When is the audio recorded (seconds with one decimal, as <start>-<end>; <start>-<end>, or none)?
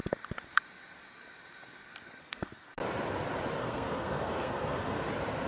0.0-2.2; 2.7-3.6; 5.1-5.5